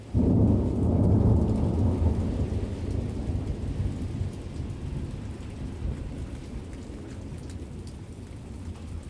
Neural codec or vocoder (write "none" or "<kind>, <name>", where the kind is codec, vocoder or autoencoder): none